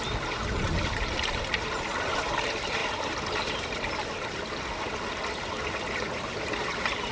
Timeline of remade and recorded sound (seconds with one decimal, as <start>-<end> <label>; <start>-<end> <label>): 0.0-7.1 recorded